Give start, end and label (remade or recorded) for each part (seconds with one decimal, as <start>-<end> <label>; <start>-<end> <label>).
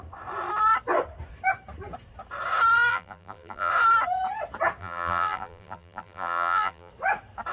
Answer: 0.0-2.9 recorded; 2.9-3.7 remade; 3.7-4.8 recorded; 4.8-6.9 remade; 6.9-7.5 recorded